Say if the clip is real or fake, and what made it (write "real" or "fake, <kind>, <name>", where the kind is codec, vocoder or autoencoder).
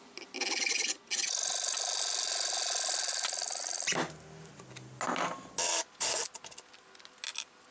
real